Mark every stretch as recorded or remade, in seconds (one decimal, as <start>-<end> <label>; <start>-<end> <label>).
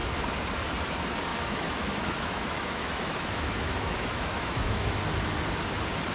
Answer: 0.0-1.3 recorded; 1.3-5.0 remade; 5.0-6.1 recorded